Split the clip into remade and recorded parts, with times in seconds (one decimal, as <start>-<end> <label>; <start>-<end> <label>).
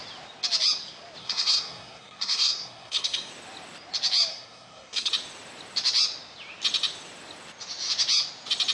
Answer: 0.0-1.2 recorded; 1.2-3.3 remade; 3.3-4.3 recorded; 4.3-5.1 remade; 5.1-8.7 recorded